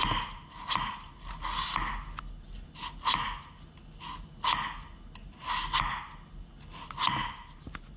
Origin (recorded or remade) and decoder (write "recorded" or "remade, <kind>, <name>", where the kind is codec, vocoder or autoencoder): recorded